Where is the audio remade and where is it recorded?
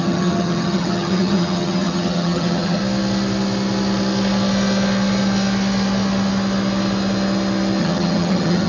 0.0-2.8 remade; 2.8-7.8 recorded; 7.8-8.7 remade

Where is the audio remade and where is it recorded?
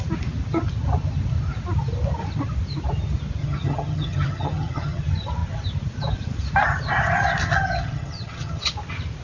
0.0-3.4 recorded; 3.4-5.0 remade; 5.0-7.4 recorded; 7.4-8.7 remade; 8.7-9.2 recorded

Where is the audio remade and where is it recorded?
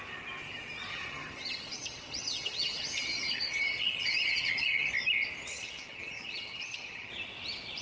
0.0-0.9 recorded; 0.9-4.9 remade; 4.9-5.5 recorded; 5.5-7.1 remade; 7.1-7.8 recorded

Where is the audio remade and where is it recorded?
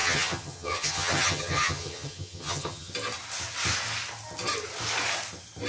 0.0-2.9 remade; 2.9-5.7 recorded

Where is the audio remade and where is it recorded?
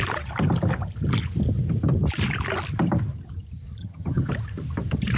0.0-3.8 recorded; 3.8-4.3 remade; 4.3-5.2 recorded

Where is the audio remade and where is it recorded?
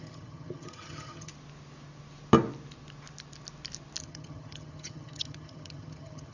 0.0-1.3 remade; 1.3-4.0 recorded; 4.0-6.3 remade